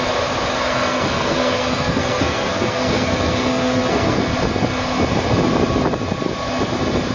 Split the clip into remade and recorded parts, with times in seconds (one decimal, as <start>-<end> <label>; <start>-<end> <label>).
0.0-0.5 recorded; 0.5-4.2 remade; 4.2-7.1 recorded